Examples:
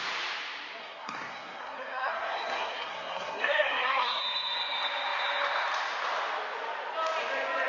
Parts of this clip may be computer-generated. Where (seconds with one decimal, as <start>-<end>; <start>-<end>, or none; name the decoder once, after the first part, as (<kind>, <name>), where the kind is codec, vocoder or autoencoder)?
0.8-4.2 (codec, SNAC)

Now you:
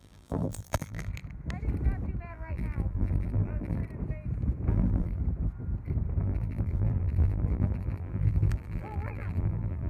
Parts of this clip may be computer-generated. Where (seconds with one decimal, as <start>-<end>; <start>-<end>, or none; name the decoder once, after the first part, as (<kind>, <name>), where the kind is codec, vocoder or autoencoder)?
0.0-1.1 (vocoder, BigVGAN v2); 2.3-3.8; 4.7-5.2; 6.2-9.9

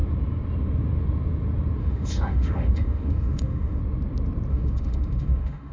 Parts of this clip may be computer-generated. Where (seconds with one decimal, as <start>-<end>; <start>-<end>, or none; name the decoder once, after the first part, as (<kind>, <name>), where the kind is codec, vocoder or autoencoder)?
1.8-3.8 (autoencoder, DAC-VAE); 4.5-5.7